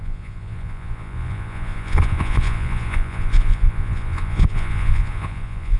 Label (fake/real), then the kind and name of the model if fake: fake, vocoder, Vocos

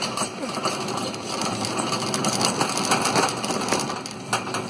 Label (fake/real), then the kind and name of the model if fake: real